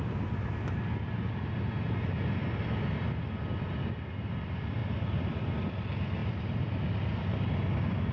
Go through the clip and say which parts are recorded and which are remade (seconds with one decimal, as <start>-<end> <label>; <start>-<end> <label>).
0.0-4.8 recorded; 4.8-5.5 remade; 5.5-8.1 recorded